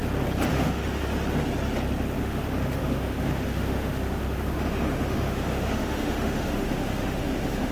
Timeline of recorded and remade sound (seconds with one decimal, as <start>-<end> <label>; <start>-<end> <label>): 0.0-0.5 recorded; 0.5-1.0 remade; 1.0-2.2 recorded; 2.2-7.7 remade